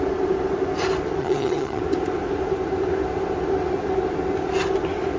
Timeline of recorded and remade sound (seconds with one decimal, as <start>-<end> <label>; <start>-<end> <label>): 0.0-1.2 recorded; 1.2-1.8 remade; 1.8-5.2 recorded